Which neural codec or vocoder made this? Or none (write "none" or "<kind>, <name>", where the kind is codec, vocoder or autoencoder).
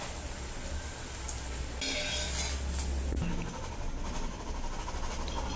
none